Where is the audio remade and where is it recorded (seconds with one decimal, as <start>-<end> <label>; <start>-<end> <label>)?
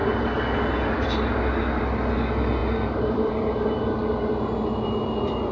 0.0-2.6 recorded; 2.6-3.3 remade; 3.3-5.5 recorded